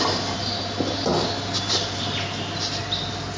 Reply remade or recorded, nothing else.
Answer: recorded